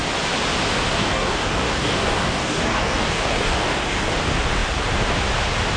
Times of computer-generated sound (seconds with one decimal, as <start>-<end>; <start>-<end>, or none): 1.0-4.1